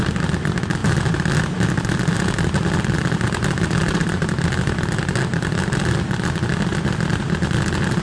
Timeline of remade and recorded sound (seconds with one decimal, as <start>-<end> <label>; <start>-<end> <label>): 0.0-8.0 recorded